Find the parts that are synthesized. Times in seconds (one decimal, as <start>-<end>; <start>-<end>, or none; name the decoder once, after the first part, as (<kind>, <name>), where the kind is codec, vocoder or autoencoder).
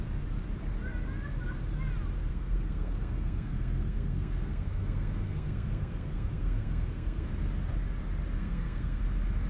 2.3-7.3 (codec, SNAC); 8.4-9.0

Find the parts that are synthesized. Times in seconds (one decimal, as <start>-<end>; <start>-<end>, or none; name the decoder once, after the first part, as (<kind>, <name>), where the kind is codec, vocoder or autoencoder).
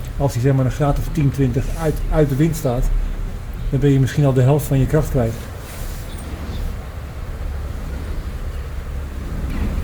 none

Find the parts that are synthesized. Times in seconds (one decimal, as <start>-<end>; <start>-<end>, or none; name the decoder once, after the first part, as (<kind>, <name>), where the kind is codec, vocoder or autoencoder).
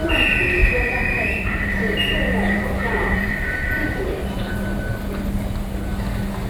0.6-4.5 (vocoder, BigVGAN v2)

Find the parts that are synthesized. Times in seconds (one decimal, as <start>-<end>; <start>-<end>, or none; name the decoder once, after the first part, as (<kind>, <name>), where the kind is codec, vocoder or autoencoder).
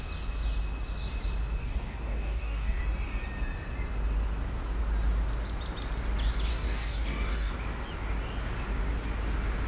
1.6-2.8 (codec, DAC); 6.5-7.5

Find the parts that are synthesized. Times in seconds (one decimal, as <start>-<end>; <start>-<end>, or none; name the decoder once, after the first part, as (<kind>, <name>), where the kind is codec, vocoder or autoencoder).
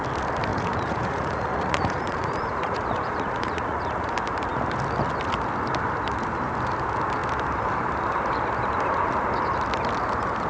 0.5-4.1 (vocoder, Vocos)